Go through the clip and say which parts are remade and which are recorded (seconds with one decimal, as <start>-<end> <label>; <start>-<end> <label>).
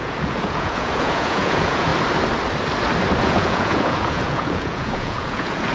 0.0-1.9 remade; 1.9-3.2 recorded; 3.2-5.7 remade